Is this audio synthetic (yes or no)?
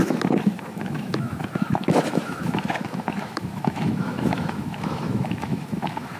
yes